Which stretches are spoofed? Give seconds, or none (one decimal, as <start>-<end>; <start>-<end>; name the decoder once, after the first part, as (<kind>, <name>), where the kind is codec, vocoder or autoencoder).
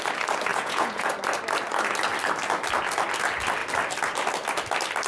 0.5-1.1 (vocoder, Vocos)